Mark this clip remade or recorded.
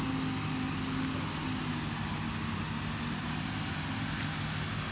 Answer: recorded